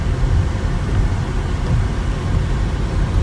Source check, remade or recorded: recorded